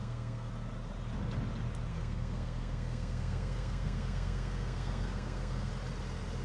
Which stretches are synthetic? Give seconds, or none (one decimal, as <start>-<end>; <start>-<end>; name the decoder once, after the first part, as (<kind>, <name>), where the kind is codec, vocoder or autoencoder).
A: 0.0-0.5 (codec, SNAC); 1.9-5.7